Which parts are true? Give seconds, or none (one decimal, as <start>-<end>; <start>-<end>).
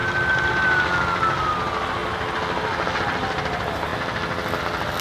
0.0-5.0